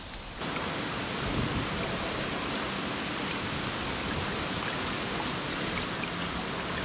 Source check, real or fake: real